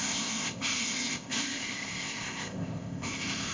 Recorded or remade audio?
remade